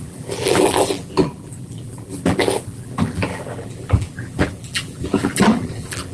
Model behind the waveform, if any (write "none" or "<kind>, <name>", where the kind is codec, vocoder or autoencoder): vocoder, BigVGAN v2